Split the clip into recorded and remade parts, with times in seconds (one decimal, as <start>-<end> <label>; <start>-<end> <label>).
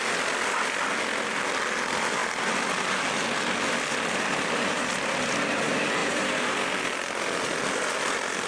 0.0-6.0 recorded; 6.0-6.9 remade; 6.9-8.5 recorded